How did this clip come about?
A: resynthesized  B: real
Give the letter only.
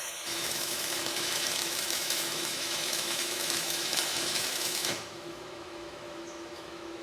A